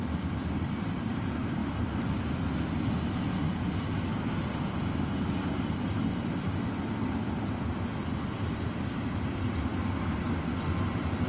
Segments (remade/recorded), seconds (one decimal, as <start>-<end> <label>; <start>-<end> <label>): 0.0-11.3 recorded